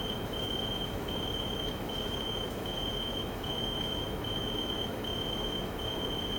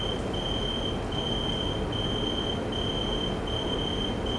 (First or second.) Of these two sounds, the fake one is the first